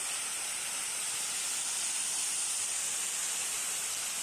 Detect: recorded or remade recorded